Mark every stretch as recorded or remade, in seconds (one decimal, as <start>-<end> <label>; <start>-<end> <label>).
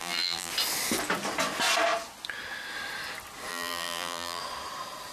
0.0-0.5 remade; 0.5-3.5 recorded; 3.5-4.4 remade; 4.4-5.1 recorded